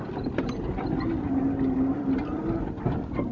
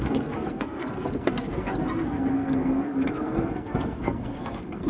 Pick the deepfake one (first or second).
second